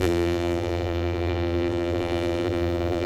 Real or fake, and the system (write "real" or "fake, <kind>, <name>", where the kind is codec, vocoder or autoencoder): fake, vocoder, BigVGAN v2